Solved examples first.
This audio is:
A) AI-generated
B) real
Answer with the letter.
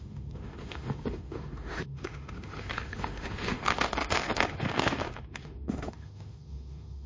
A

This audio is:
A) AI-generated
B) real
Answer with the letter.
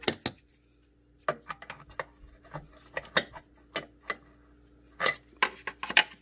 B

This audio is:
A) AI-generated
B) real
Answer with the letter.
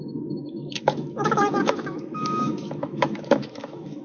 A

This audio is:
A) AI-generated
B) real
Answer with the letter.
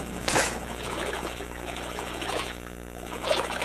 A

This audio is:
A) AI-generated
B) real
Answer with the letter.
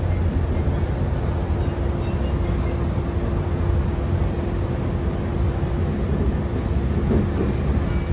B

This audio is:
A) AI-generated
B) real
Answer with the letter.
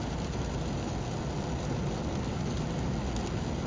B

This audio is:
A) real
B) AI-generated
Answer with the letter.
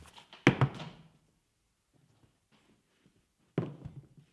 A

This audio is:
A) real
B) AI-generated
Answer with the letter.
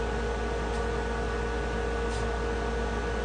A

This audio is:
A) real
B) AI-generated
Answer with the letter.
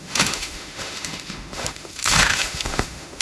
B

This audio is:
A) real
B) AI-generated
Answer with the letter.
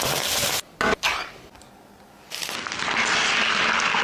A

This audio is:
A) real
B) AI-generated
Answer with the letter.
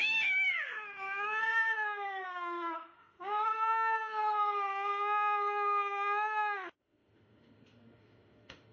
B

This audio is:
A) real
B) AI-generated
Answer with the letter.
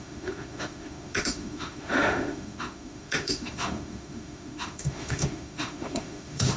B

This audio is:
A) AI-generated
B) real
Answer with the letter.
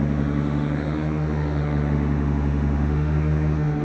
A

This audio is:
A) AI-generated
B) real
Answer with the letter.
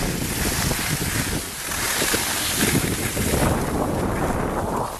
B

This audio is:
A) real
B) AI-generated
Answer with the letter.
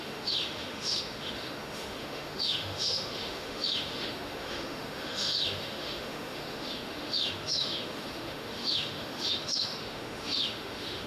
B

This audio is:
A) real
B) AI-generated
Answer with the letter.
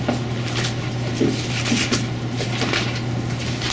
A